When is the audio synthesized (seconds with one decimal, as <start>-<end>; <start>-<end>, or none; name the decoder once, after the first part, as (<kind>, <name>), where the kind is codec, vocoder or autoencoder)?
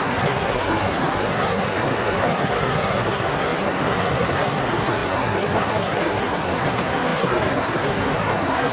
0.0-8.7 (codec, SNAC)